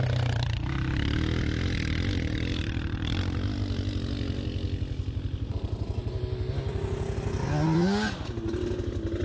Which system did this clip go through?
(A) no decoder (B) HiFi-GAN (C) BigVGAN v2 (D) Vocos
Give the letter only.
A